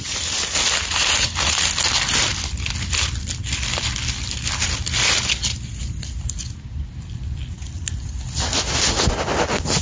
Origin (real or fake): real